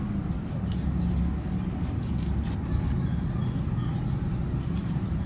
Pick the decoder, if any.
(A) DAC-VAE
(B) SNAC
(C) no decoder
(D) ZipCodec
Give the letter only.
C